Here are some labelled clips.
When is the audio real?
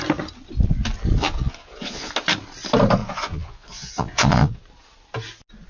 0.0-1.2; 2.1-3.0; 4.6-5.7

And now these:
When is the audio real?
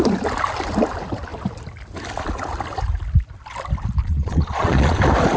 0.0-4.0; 5.0-5.4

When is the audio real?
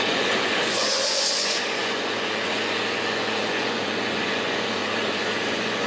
none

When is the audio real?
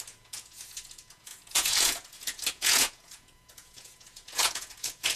none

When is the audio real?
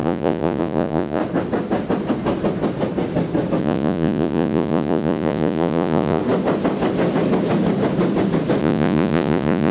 1.2-3.6; 6.2-8.6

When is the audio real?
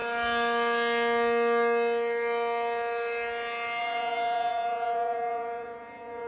0.0-3.8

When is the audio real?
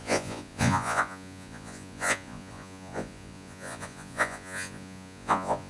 none